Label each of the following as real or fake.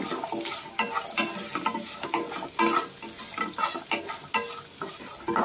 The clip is real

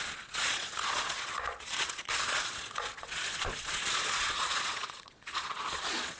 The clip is fake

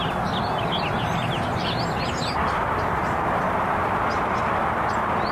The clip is real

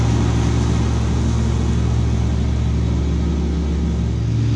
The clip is real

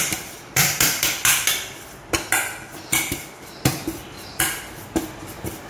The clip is fake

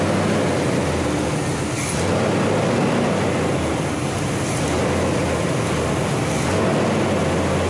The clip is real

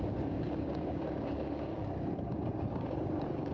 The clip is fake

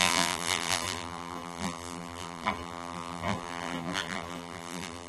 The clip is fake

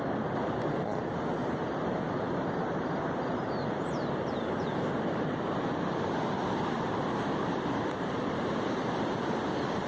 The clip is fake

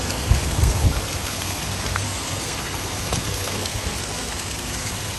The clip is fake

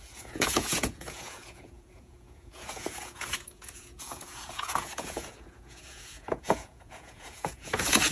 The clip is fake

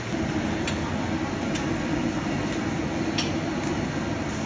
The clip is real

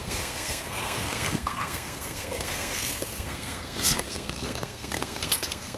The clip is fake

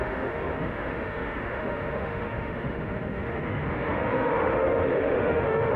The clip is fake